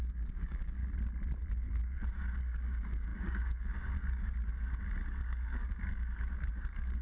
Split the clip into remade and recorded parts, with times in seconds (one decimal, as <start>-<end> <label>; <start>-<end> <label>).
0.0-0.8 remade; 0.8-1.5 recorded; 1.5-7.0 remade